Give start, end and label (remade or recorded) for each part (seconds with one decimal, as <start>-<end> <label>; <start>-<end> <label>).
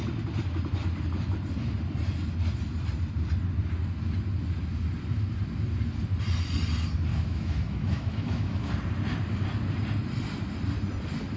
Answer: 0.0-7.1 recorded; 7.1-8.7 remade; 8.7-11.4 recorded